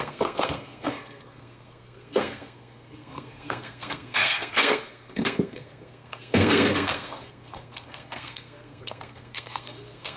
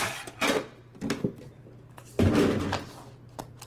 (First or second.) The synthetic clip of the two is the first